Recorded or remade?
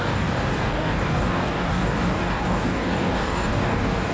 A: remade